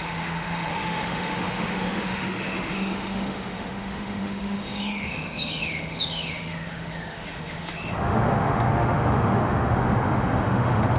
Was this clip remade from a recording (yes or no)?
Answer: yes